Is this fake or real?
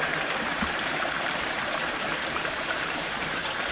fake